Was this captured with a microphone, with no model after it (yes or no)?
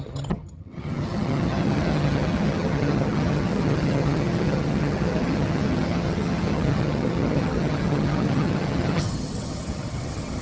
no